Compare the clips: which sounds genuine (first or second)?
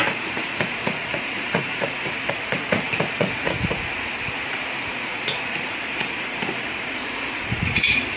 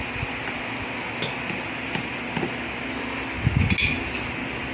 second